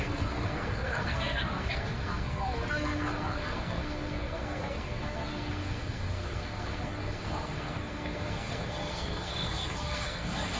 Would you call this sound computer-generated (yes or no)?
yes